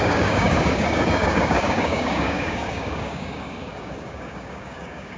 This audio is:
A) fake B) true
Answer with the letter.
A